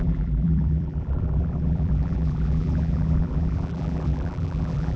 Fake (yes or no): yes